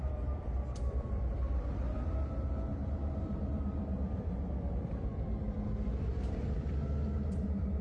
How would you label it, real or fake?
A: fake